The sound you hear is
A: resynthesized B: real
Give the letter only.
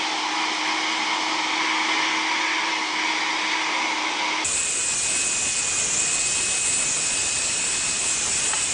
B